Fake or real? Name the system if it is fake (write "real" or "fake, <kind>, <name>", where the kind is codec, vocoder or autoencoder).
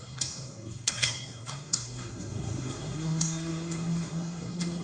fake, codec, SNAC